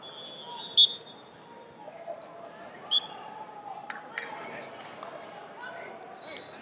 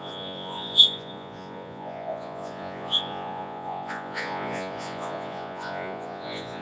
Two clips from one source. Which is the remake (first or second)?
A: second